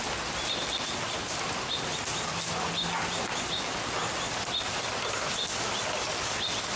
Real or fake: real